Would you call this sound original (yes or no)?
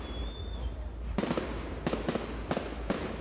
yes